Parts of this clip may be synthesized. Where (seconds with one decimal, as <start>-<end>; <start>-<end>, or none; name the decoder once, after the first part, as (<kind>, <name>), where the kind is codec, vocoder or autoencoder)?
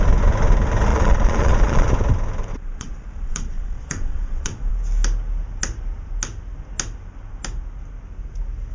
0.9-1.9 (vocoder, Vocos); 2.5-4.7